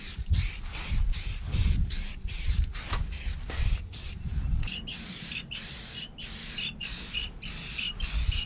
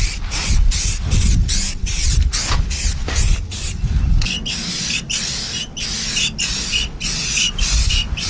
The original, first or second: second